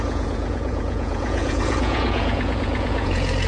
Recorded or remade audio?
remade